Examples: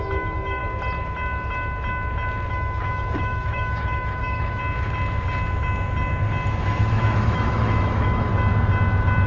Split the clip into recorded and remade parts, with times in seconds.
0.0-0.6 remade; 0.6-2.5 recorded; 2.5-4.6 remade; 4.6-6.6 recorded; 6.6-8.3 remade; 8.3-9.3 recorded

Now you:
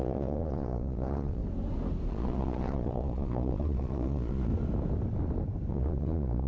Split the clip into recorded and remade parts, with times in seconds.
0.0-1.4 remade; 1.4-2.1 recorded; 2.1-4.5 remade; 4.5-5.7 recorded; 5.7-6.5 remade

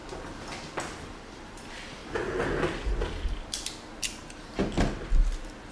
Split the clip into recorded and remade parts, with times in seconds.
0.0-0.8 recorded; 0.8-2.0 remade; 2.0-5.7 recorded